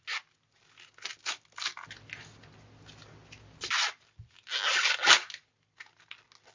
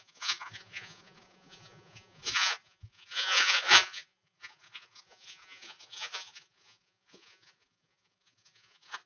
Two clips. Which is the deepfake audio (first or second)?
second